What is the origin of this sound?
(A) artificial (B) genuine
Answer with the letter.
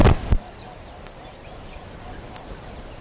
B